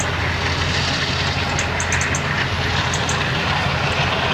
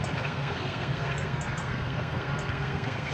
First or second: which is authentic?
first